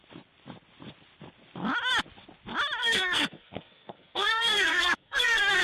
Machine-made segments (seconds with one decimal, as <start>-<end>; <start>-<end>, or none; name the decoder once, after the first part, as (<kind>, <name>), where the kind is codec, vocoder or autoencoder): 2.8-5.6 (codec, SNAC)